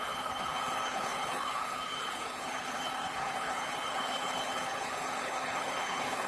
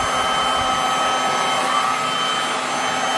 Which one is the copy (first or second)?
first